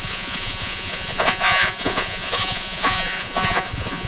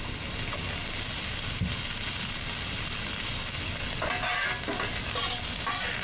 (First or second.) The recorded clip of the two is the second